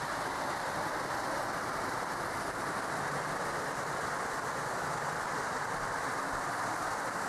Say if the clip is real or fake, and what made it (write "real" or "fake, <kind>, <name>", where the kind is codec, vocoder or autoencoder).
fake, vocoder, BigVGAN v2